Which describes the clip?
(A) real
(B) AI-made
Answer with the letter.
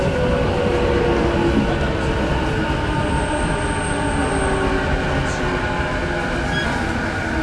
A